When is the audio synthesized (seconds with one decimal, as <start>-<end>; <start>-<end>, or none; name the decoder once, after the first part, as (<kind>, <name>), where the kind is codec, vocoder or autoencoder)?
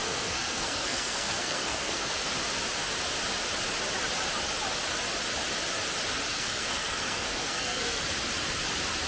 0.0-2.3 (codec, SNAC); 6.3-8.1